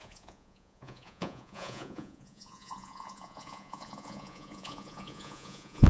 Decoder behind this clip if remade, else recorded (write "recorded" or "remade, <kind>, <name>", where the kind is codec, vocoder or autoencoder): remade, vocoder, Vocos